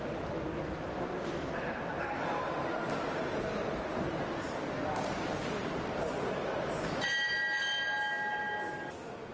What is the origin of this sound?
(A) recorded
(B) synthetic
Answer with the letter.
A